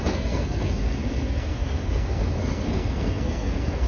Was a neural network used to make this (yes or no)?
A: yes